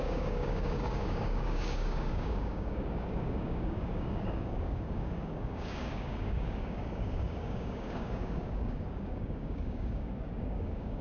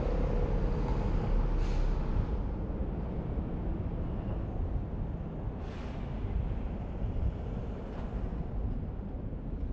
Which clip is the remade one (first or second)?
first